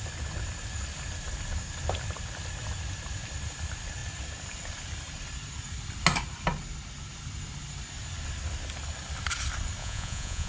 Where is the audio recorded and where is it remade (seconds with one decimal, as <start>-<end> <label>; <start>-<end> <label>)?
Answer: 0.0-9.8 recorded; 9.8-10.5 remade